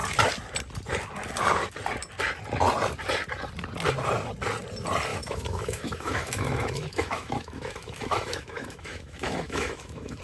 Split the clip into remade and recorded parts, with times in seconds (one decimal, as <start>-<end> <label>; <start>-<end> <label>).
0.0-5.1 recorded; 5.1-10.2 remade